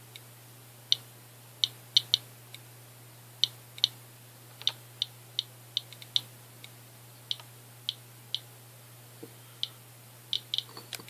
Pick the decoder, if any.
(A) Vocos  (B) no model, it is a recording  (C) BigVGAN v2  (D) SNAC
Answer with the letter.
B